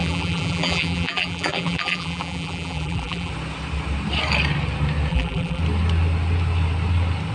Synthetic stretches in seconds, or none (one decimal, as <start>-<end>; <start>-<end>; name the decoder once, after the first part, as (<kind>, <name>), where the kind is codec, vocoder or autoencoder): 0.0-3.3 (vocoder, BigVGAN v2); 5.1-5.6